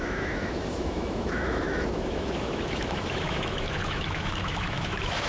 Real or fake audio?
fake